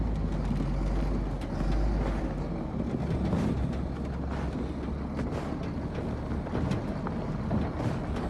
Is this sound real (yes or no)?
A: yes